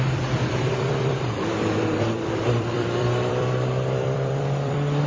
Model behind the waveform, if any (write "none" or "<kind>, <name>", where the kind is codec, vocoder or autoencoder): vocoder, BigVGAN v2